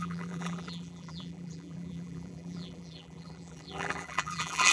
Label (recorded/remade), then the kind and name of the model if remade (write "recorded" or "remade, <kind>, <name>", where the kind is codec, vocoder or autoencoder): remade, vocoder, BigVGAN v2